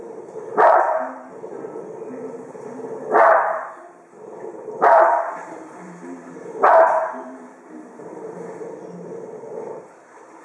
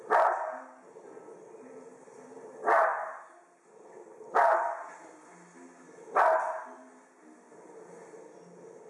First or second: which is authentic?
second